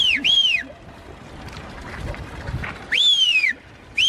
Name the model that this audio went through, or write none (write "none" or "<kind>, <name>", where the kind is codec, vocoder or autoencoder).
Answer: none